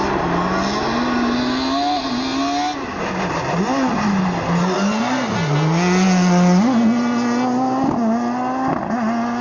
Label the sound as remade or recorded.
recorded